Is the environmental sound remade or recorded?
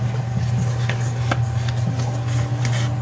recorded